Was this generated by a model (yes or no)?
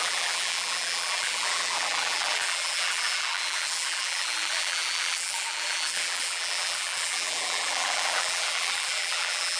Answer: yes